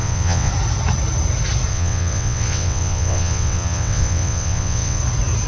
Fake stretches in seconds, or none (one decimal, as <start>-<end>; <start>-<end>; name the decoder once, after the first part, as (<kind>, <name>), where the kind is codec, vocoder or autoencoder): 0.0-0.5 (vocoder, WaveNeXt); 1.7-5.0